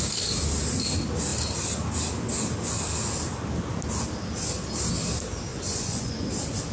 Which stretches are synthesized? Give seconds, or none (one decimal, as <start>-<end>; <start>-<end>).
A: 5.5-6.3